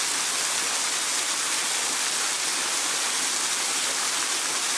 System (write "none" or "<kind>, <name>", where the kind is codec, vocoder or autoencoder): none